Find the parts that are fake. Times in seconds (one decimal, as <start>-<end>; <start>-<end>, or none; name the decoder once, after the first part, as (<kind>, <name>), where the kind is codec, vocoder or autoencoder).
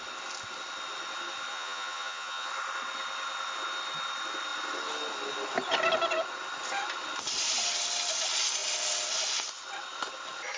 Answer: 1.5-2.5 (vocoder, Vocos)